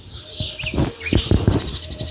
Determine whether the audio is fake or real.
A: real